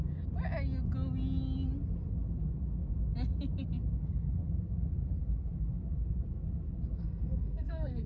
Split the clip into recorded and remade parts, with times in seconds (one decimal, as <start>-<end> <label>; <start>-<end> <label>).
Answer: 0.0-7.0 recorded; 7.0-8.1 remade